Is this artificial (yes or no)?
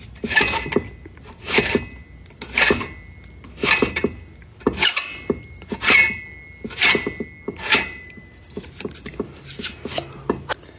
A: no